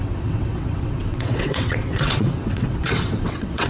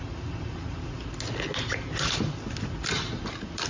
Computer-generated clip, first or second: first